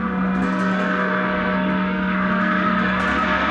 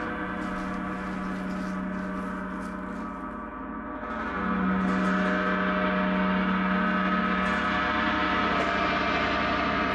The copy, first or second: first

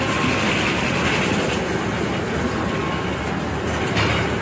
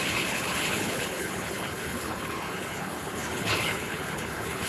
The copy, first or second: second